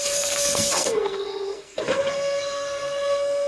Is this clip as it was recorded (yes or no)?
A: no